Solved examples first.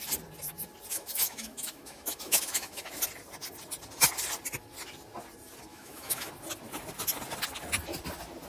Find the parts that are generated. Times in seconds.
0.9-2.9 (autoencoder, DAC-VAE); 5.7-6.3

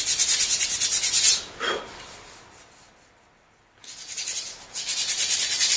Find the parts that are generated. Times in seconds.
none

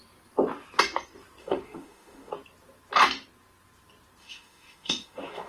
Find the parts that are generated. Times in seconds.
1.4-2.3 (autoencoder, DAC-VAE); 4.2-5.5